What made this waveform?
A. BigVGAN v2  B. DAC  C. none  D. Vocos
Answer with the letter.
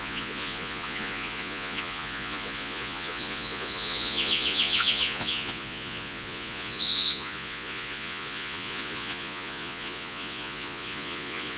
D